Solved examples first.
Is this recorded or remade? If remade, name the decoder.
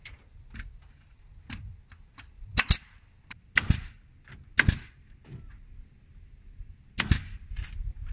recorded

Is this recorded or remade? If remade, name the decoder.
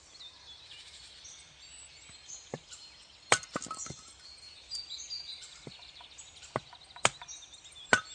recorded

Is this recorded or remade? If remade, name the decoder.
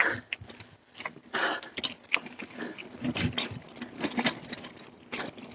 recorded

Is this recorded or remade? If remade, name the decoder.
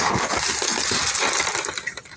recorded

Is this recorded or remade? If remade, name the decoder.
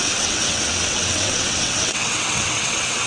remade, vocoder, WaveNeXt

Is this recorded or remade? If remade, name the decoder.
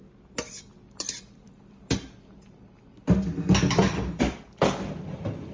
recorded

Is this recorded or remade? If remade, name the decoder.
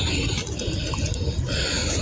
recorded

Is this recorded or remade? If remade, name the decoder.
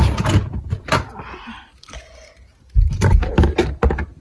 recorded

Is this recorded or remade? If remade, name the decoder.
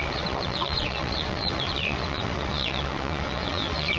remade, vocoder, WaveNeXt